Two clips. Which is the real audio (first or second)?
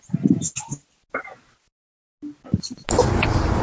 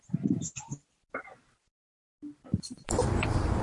first